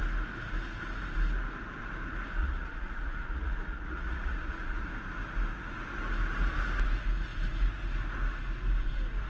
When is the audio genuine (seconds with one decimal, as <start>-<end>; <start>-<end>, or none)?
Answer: 0.0-2.4; 4.9-9.3